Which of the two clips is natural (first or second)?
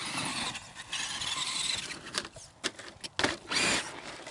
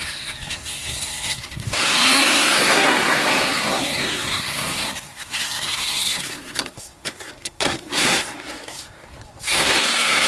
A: first